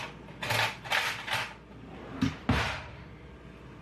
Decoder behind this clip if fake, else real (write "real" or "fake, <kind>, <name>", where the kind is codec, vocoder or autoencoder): real